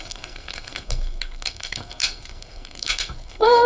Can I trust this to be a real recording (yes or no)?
no